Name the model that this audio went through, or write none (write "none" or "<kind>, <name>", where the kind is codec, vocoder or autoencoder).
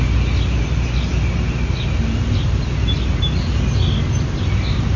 none